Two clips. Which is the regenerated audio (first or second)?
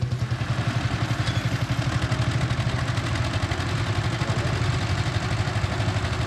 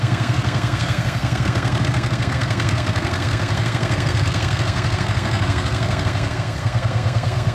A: second